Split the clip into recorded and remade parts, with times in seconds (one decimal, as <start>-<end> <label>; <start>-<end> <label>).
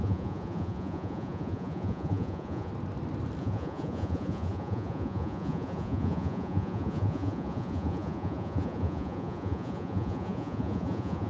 0.0-2.7 remade; 2.7-3.4 recorded; 3.4-11.3 remade